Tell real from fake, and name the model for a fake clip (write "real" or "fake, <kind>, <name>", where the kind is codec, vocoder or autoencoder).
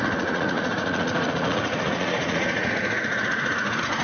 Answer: fake, vocoder, Vocos